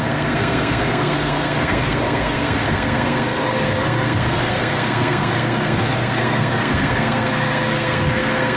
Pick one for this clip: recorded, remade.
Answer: remade